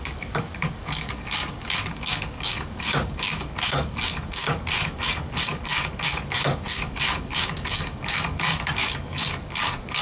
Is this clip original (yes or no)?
no